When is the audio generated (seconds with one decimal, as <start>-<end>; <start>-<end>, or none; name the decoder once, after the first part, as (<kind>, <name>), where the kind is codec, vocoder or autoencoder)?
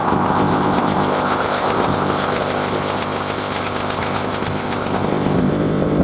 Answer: 0.0-6.0 (codec, ZipCodec)